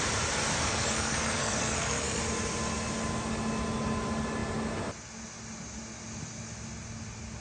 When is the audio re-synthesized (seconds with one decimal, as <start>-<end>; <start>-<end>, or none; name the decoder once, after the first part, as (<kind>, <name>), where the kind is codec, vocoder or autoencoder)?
0.6-2.2 (codec, SNAC)